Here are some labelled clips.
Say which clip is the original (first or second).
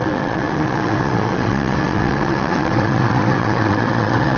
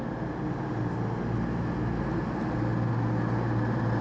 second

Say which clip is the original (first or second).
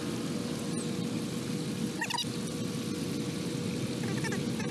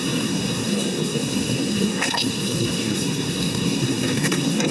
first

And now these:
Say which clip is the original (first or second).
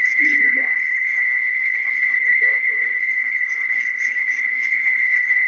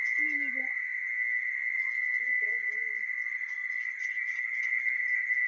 second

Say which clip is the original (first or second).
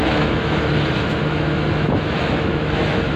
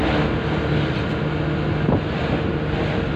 second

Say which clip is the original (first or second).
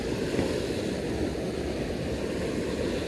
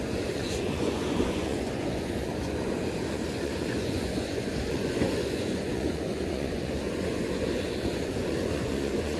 first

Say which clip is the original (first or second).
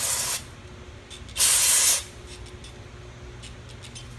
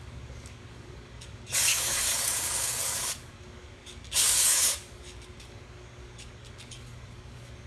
first